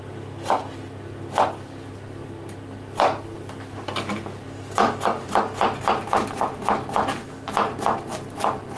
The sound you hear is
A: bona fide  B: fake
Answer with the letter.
A